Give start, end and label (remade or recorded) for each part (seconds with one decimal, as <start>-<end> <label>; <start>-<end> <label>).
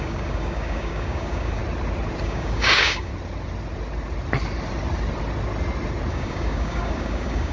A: 0.0-1.6 remade; 1.6-2.2 recorded; 2.2-3.1 remade; 3.1-6.1 recorded; 6.1-7.5 remade